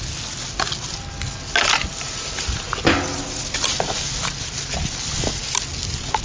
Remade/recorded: recorded